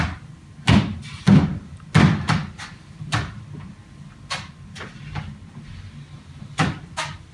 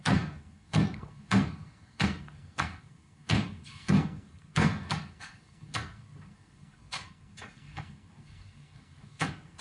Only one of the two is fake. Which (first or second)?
second